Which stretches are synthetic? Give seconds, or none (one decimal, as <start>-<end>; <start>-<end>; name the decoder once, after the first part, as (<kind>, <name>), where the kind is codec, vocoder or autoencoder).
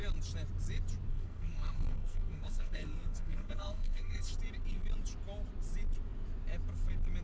1.1-4.3 (codec, SNAC)